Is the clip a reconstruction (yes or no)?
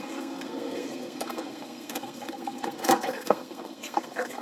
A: yes